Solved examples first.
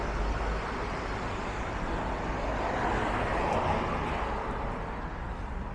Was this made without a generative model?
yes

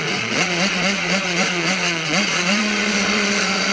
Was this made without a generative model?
no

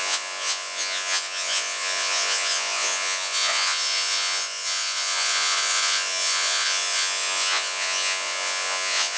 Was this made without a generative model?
no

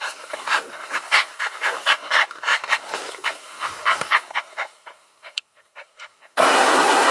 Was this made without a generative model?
no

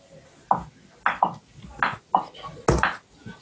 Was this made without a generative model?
yes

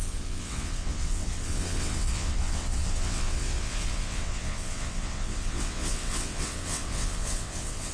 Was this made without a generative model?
no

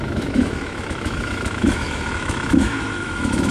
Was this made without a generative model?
no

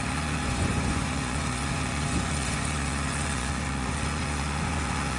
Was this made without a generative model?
no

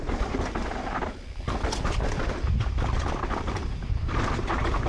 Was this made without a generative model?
yes